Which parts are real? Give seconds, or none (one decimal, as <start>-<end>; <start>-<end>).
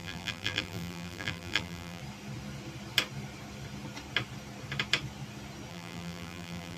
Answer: 2.0-5.7